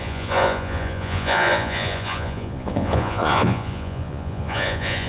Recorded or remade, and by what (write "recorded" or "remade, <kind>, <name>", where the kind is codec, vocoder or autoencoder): remade, vocoder, Vocos